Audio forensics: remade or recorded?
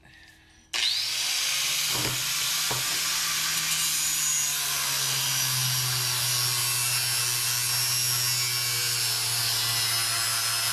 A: recorded